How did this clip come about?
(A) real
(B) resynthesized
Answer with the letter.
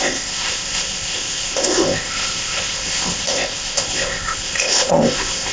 B